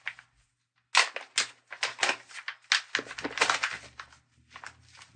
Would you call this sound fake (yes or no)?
no